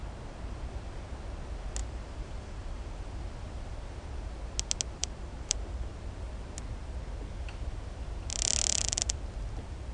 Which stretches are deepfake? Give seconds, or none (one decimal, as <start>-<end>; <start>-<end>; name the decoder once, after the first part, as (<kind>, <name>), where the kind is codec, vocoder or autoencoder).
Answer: 1.8-3.2 (vocoder, BigVGAN v2); 5.0-5.9